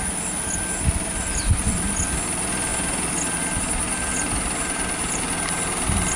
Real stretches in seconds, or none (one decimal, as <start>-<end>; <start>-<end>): 0.0-6.2